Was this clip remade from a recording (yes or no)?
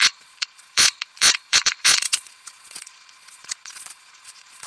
yes